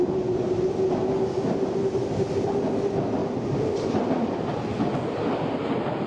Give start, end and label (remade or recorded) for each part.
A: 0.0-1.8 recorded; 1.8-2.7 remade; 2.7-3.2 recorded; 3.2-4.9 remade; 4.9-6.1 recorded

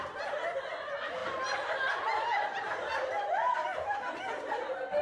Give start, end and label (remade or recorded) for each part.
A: 0.0-1.2 recorded; 1.2-4.2 remade; 4.2-5.0 recorded

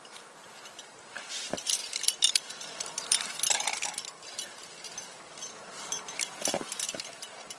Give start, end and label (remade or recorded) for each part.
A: 0.0-1.8 recorded; 1.8-3.4 remade; 3.4-7.6 recorded

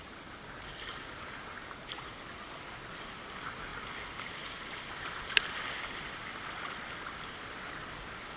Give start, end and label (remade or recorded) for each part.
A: 0.0-1.6 recorded; 1.6-2.6 remade; 2.6-8.4 recorded

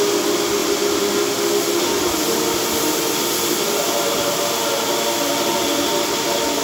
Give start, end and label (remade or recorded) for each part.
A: 0.0-6.6 recorded

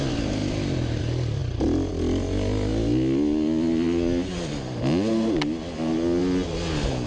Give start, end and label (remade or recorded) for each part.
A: 0.0-7.1 recorded

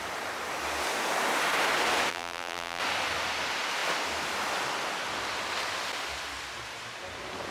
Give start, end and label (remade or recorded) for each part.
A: 0.0-2.1 recorded; 2.1-2.8 remade; 2.8-7.5 recorded

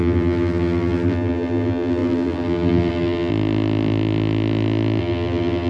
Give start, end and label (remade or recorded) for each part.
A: 0.0-3.3 remade; 3.3-5.0 recorded; 5.0-5.7 remade